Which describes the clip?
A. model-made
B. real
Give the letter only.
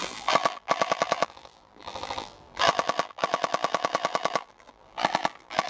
A